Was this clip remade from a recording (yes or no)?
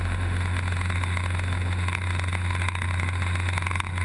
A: yes